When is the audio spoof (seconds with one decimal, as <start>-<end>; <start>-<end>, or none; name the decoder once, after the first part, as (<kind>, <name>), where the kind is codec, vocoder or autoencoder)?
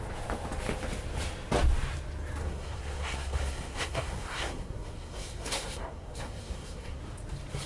2.4-7.0 (codec, SNAC)